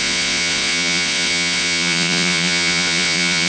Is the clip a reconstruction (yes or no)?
yes